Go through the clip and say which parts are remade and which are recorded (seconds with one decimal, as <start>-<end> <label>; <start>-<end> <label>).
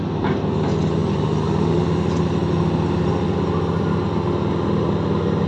0.0-1.0 recorded; 1.0-1.8 remade; 1.8-5.5 recorded